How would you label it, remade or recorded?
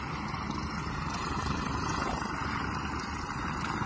remade